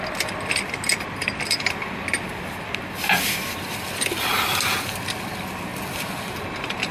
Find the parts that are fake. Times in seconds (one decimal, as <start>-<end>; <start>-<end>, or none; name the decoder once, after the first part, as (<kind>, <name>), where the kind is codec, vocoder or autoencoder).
none